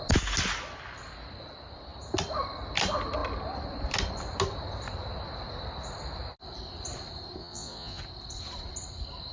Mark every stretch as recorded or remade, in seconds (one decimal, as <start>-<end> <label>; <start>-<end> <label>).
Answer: 0.0-7.4 recorded; 7.4-8.0 remade; 8.0-9.3 recorded

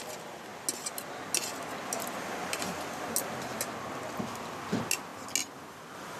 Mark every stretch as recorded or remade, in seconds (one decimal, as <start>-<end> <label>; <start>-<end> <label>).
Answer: 0.0-6.2 recorded

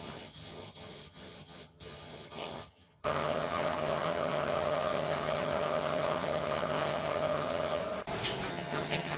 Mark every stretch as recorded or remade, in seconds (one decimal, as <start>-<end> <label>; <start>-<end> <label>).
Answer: 0.0-7.8 remade; 7.8-8.5 recorded; 8.5-9.2 remade